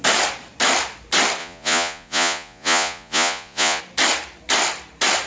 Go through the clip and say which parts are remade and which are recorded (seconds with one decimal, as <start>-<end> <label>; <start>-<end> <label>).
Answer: 0.0-1.4 recorded; 1.4-3.8 remade; 3.8-5.3 recorded